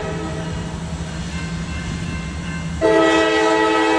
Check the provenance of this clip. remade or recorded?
recorded